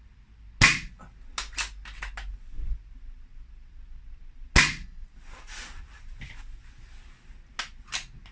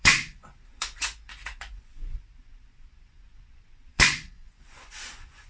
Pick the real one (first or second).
first